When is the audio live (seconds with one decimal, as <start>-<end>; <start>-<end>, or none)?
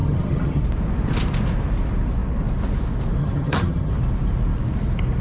0.6-3.2; 3.9-5.2